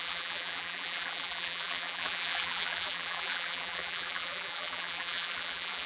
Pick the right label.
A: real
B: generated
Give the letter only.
B